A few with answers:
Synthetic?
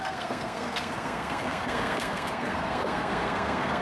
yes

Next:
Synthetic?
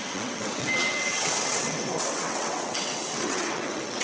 yes